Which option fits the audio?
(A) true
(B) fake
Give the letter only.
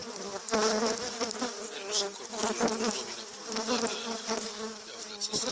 A